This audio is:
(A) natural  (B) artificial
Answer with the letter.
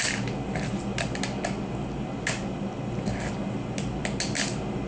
A